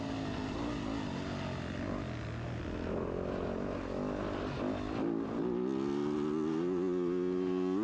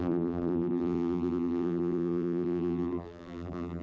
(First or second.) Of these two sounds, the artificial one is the second